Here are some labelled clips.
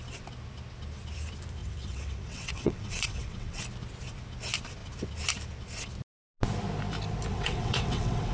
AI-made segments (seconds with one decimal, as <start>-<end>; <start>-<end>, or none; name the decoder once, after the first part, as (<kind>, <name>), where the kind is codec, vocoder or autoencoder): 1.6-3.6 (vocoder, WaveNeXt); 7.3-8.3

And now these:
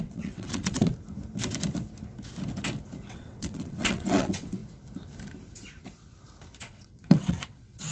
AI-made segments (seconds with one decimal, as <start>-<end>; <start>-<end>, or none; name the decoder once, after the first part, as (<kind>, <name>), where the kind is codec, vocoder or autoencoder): 0.0-0.9 (vocoder, WaveNeXt); 3.1-4.6; 6.6-7.9

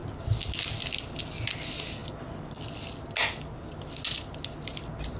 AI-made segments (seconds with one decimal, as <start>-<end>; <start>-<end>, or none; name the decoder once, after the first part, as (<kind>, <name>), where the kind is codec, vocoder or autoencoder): none

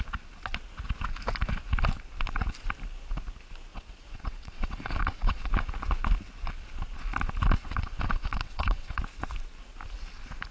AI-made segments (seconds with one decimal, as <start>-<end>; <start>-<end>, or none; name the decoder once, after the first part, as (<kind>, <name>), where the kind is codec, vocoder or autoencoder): 3.7-5.5 (vocoder, WaveNeXt); 7.6-9.0